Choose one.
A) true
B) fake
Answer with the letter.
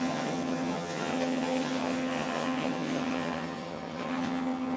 B